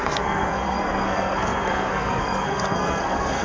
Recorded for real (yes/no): no